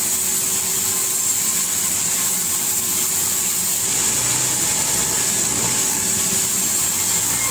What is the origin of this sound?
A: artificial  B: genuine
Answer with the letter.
B